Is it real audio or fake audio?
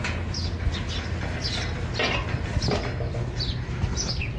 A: real